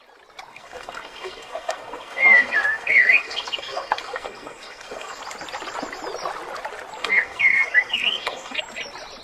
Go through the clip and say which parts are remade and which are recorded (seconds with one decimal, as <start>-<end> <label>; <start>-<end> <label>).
0.0-0.5 recorded; 0.5-5.2 remade; 5.2-7.0 recorded; 7.0-8.6 remade; 8.6-9.2 recorded